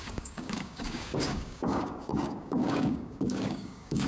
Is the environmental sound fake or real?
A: fake